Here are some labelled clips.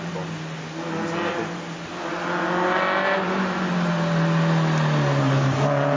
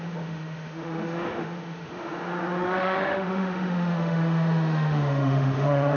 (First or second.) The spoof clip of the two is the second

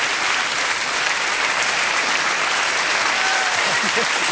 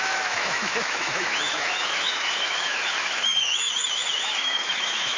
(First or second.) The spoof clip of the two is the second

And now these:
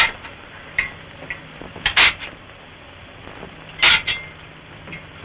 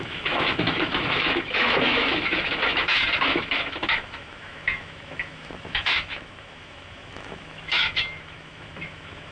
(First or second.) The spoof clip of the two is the second